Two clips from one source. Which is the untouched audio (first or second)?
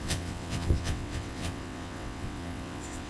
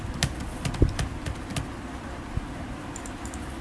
second